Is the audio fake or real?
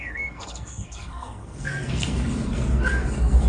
fake